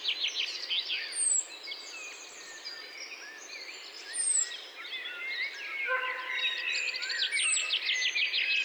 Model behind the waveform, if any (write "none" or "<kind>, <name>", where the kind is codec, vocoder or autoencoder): none